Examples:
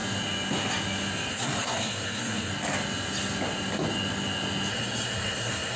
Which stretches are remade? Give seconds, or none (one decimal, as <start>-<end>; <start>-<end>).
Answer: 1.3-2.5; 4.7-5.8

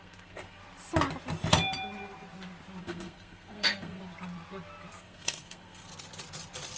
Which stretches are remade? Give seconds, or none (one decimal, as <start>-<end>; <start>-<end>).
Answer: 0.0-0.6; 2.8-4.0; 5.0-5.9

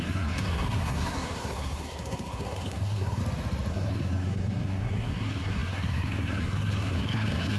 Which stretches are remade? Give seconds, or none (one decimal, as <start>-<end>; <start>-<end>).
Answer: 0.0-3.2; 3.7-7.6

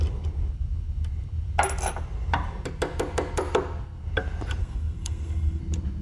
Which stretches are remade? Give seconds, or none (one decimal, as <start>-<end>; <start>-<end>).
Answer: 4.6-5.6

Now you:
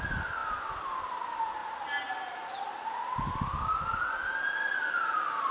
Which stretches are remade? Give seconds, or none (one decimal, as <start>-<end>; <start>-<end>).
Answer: none